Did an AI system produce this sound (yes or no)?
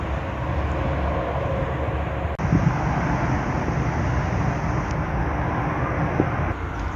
no